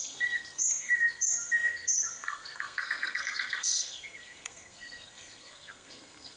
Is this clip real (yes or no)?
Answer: no